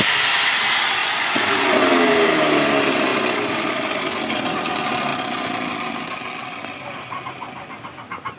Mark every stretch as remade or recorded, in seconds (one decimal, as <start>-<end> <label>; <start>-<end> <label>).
0.0-1.0 recorded; 1.0-1.8 remade; 1.8-8.4 recorded